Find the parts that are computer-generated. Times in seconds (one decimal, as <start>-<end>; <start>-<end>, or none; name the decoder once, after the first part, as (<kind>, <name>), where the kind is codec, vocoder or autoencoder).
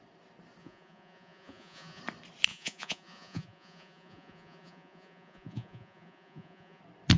0.6-2.0 (vocoder, Vocos); 2.5-6.8